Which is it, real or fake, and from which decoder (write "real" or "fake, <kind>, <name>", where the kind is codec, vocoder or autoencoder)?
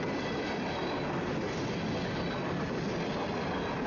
real